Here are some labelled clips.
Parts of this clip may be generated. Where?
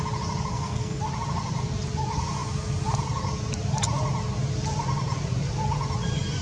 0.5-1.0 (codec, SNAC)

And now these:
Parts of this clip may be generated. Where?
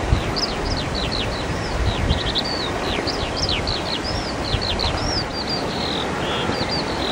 0.0-5.3 (vocoder, BigVGAN v2); 6.5-7.1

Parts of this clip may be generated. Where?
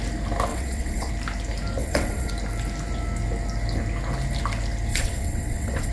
0.5-1.1 (vocoder, WaveNeXt); 1.8-2.3; 4.9-5.9